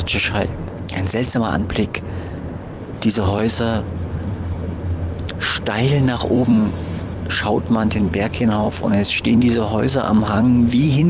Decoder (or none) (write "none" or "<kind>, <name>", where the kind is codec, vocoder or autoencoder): vocoder, BigVGAN v2